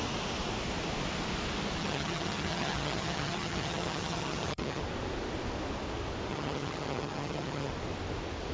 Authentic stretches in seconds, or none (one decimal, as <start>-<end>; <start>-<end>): 0.0-1.8; 4.8-6.3; 7.7-8.5